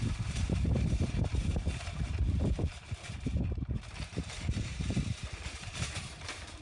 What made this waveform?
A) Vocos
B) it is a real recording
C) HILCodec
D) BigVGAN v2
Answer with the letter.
D